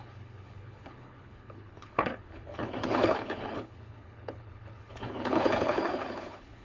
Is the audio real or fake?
fake